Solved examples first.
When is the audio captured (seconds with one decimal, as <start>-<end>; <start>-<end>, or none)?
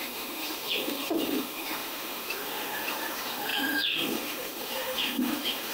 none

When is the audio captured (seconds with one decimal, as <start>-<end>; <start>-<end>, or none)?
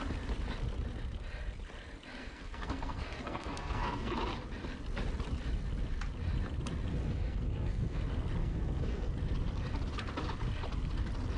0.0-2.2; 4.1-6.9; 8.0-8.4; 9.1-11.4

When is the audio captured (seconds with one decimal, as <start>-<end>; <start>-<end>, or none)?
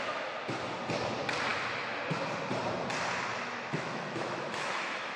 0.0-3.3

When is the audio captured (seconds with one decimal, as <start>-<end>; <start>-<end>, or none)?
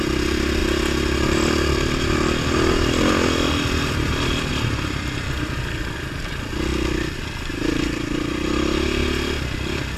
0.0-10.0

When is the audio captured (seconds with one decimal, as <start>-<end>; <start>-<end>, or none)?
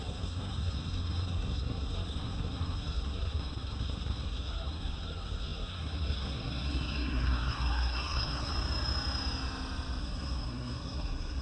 8.5-10.0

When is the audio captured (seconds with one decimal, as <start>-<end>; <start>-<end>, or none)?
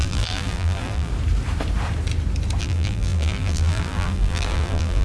1.1-2.6